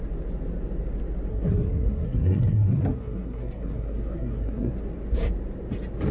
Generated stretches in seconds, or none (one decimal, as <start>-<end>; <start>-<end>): 1.3-4.7

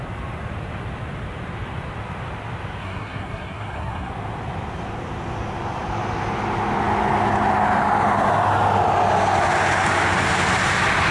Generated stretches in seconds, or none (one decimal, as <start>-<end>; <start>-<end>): 2.8-4.1

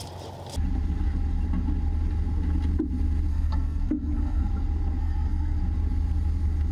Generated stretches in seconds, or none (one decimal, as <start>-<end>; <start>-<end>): 3.3-4.5; 5.0-5.6

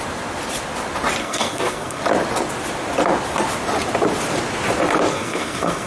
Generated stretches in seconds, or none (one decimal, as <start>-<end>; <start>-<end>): 1.2-2.0; 5.1-5.9

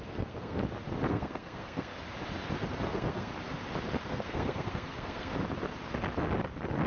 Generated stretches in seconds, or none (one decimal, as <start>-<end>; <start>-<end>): 0.0-0.6; 1.1-1.9; 2.9-3.3; 4.0-5.3

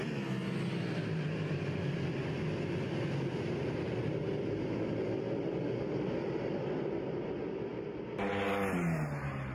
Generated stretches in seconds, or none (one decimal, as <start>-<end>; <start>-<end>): none

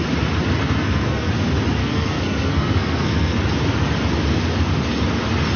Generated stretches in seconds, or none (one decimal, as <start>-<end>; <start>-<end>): 0.6-1.3; 1.8-3.4